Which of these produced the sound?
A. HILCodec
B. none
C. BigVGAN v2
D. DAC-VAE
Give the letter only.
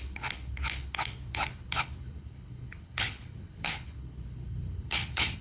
A